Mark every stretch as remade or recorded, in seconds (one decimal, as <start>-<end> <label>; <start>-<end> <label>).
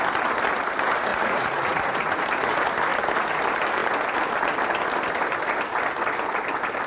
0.0-1.1 recorded; 1.1-2.2 remade; 2.2-6.9 recorded